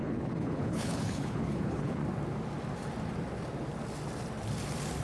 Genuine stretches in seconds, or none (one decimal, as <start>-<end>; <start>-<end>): 2.0-5.0